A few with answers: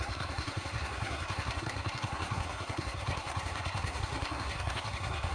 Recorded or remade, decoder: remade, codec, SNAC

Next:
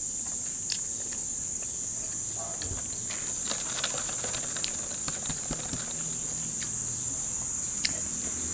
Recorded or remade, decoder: recorded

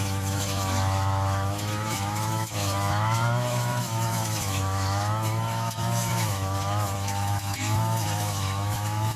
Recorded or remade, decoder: remade, autoencoder, DAC-VAE